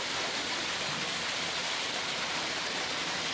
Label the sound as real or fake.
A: real